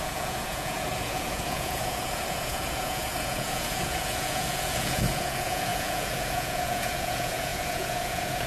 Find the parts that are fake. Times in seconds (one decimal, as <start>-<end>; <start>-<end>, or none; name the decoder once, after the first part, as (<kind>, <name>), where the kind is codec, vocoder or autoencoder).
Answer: 0.0-8.5 (vocoder, Vocos)